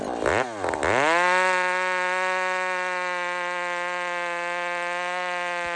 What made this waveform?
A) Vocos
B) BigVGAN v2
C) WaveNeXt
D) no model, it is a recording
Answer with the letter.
D